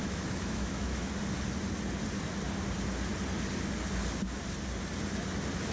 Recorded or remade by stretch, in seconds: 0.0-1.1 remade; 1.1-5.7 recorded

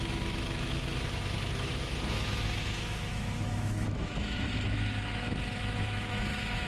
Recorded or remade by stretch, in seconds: 0.0-6.7 remade